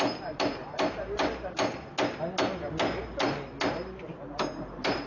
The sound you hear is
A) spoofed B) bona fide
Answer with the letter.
B